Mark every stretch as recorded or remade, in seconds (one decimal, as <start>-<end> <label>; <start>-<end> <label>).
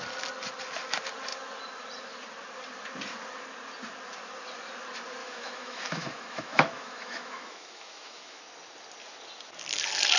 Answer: 0.0-5.2 recorded; 5.2-8.4 remade; 8.4-10.2 recorded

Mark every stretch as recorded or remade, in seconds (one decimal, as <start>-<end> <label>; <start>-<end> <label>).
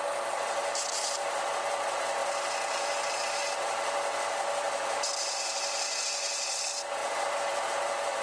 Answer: 0.0-2.2 recorded; 2.2-6.0 remade; 6.0-7.0 recorded; 7.0-7.6 remade; 7.6-8.2 recorded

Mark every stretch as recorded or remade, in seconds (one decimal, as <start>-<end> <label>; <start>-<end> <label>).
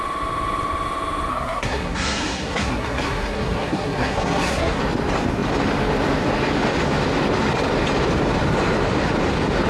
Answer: 0.0-1.3 recorded; 1.3-4.8 remade; 4.8-9.7 recorded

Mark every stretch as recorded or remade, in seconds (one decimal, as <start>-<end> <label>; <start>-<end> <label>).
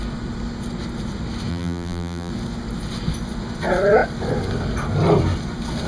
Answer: 0.0-1.5 recorded; 1.5-2.3 remade; 2.3-5.9 recorded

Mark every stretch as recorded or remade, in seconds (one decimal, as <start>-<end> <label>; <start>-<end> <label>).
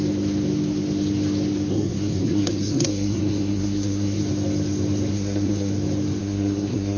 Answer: 0.0-1.7 recorded; 1.7-4.2 remade; 4.2-5.1 recorded; 5.1-5.7 remade; 5.7-6.2 recorded; 6.2-7.0 remade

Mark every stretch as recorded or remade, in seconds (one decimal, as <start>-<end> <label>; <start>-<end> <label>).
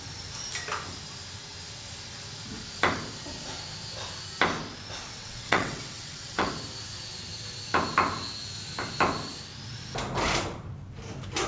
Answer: 0.0-5.2 recorded; 5.2-6.5 remade; 6.5-11.5 recorded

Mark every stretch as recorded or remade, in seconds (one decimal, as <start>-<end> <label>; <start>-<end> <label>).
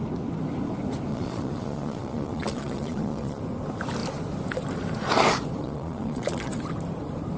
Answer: 0.0-1.1 recorded; 1.1-3.4 remade; 3.4-5.6 recorded; 5.6-6.5 remade; 6.5-7.4 recorded